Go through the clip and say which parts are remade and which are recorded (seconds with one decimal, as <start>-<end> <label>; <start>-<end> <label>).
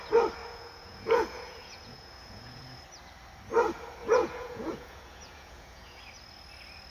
0.0-0.4 recorded; 0.4-2.6 remade; 2.6-4.0 recorded; 4.0-6.0 remade; 6.0-6.9 recorded